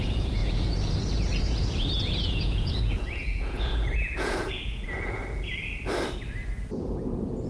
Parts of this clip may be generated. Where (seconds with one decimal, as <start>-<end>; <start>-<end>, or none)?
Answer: 0.0-5.2; 6.8-7.5